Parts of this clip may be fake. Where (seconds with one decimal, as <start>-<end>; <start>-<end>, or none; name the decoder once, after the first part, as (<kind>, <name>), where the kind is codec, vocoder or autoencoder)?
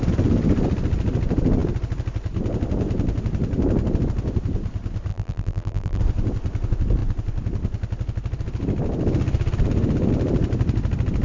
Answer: 5.1-6.0 (vocoder, BigVGAN v2)